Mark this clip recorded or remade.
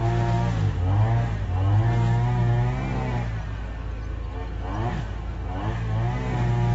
recorded